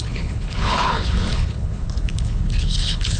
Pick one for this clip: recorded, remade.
remade